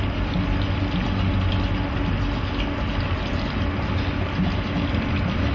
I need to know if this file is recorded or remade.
recorded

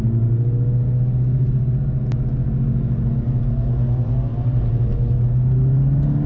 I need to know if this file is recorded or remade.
recorded